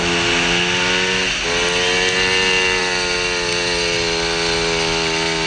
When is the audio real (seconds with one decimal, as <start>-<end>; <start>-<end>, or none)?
0.0-5.5